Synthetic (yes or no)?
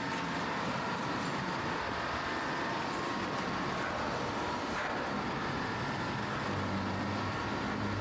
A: no